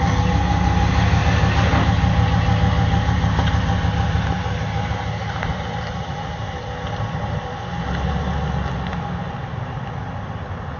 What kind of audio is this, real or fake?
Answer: real